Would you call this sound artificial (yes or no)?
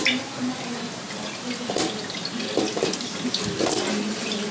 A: no